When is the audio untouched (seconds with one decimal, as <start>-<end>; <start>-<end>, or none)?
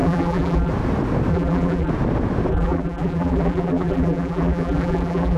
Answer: 0.7-1.3; 1.9-2.5